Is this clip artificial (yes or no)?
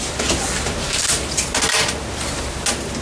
no